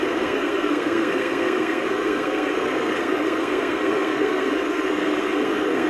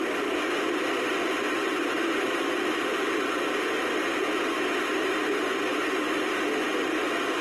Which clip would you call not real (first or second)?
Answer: first